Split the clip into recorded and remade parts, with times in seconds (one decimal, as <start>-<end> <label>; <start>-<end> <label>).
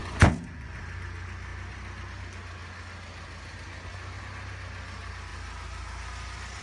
0.0-0.8 remade; 0.8-6.6 recorded